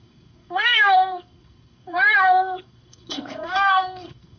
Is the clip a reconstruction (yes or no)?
yes